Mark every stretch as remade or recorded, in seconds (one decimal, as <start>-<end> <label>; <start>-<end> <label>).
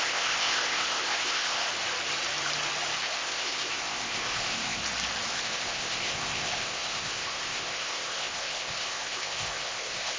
0.0-1.7 remade; 1.7-3.0 recorded; 3.0-4.8 remade; 4.8-5.3 recorded; 5.3-10.2 remade